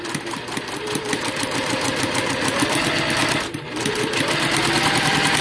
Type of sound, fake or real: real